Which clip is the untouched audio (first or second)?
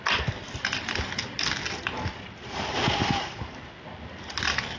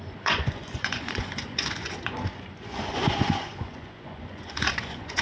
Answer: first